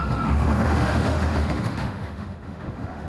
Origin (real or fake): fake